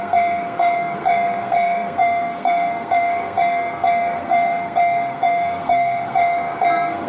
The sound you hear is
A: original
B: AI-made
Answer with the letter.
B